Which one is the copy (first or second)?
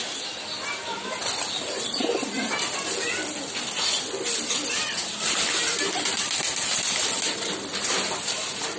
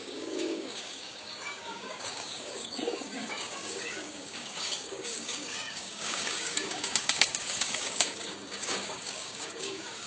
second